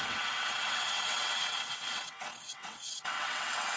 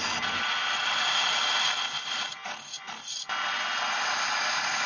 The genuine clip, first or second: second